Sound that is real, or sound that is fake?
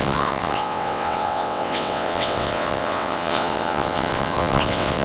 fake